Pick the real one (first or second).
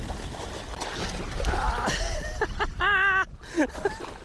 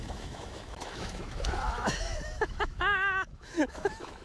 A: first